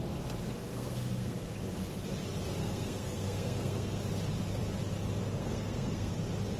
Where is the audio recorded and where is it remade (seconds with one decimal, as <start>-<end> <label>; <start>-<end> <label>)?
0.0-0.7 recorded; 0.7-1.4 remade; 1.4-2.6 recorded; 2.6-4.0 remade; 4.0-5.4 recorded; 5.4-6.1 remade; 6.1-6.6 recorded